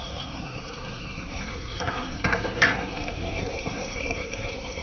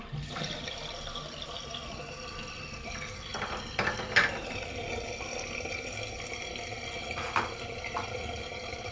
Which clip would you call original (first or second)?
second